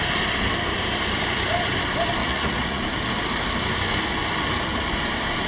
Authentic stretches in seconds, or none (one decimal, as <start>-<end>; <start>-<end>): 0.0-2.2; 2.8-5.5